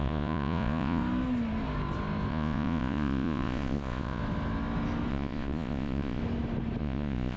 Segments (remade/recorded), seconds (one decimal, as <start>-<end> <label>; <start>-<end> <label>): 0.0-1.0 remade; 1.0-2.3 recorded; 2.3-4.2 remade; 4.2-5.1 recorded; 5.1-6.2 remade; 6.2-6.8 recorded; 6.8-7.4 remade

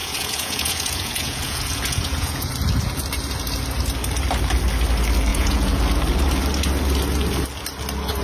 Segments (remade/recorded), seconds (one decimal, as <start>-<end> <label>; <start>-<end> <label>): 0.0-2.5 remade; 2.5-5.3 recorded; 5.3-5.8 remade; 5.8-8.2 recorded

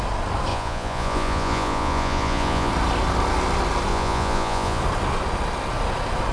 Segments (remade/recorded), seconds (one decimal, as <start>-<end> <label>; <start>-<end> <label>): 0.0-0.5 recorded; 0.5-2.7 remade; 2.7-3.9 recorded; 3.9-4.8 remade; 4.8-6.3 recorded